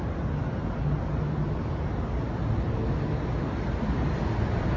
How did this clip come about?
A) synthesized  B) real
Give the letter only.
B